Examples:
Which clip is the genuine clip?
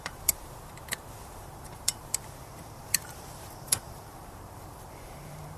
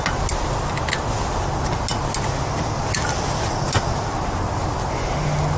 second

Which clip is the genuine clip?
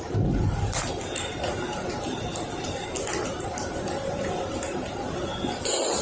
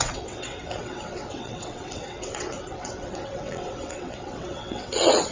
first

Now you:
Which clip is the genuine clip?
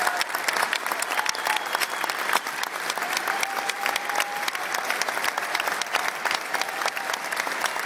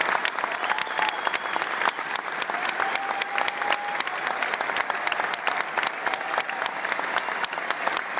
second